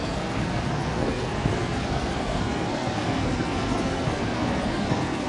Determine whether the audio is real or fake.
fake